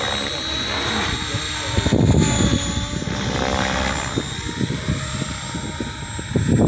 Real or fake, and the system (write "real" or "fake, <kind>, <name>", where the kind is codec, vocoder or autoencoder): real